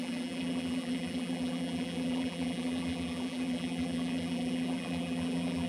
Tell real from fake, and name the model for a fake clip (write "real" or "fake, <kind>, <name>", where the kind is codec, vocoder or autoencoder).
fake, vocoder, BigVGAN v2